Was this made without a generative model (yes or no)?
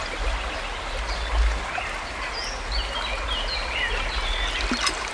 yes